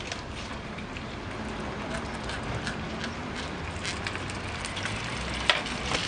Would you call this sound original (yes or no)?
yes